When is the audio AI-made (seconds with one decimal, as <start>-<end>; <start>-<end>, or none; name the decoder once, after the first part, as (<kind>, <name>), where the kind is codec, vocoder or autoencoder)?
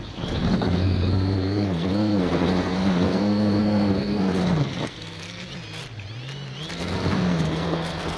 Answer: 0.0-5.4 (codec, SNAC); 6.7-8.2